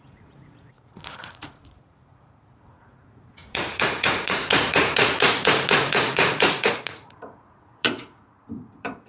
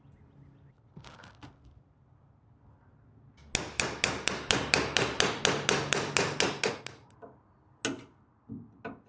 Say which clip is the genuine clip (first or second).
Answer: second